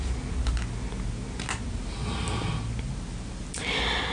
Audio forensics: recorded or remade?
recorded